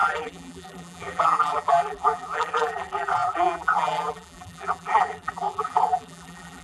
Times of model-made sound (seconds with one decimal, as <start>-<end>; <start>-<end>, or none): 0.0-6.6